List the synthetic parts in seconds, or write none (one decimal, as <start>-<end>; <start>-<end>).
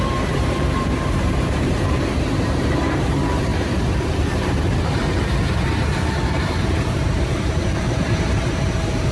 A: 0.0-9.1